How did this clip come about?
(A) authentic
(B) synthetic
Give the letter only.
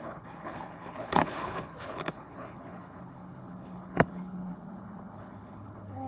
B